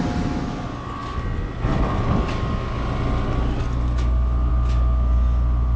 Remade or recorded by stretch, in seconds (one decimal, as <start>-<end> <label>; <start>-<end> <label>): 0.0-5.8 recorded